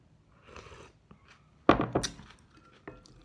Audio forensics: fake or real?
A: real